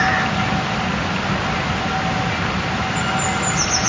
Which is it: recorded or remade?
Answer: recorded